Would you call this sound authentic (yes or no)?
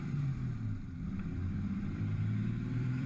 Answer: no